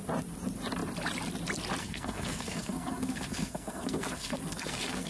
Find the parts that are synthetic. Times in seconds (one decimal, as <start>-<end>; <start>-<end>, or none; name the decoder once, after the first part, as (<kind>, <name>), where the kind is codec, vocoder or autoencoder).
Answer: 1.8-5.1 (codec, SNAC)